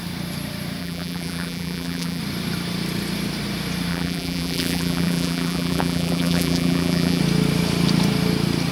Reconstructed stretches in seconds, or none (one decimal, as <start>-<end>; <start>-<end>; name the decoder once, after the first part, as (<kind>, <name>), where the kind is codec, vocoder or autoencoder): 0.8-2.2 (vocoder, BigVGAN v2); 3.9-7.2